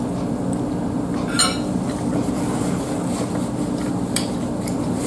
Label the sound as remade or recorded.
recorded